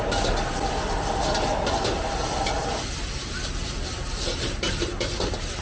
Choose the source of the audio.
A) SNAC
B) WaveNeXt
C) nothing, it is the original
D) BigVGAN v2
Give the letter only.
C